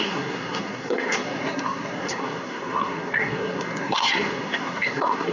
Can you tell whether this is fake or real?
fake